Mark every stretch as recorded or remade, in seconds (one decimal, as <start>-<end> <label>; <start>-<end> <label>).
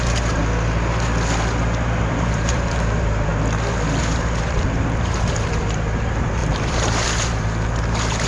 0.0-0.4 remade; 0.4-2.0 recorded; 2.0-3.3 remade; 3.3-4.0 recorded; 4.0-8.3 remade